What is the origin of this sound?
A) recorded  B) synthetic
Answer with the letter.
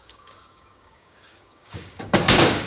B